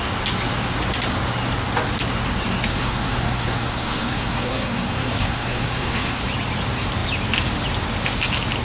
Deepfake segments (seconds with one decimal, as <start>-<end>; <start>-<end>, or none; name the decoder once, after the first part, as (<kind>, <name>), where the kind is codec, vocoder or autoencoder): 2.7-6.2 (codec, SNAC)